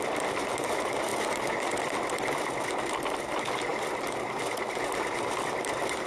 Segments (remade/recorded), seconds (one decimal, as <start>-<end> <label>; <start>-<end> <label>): 0.0-6.1 recorded